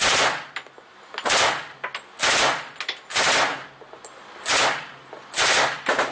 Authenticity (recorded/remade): recorded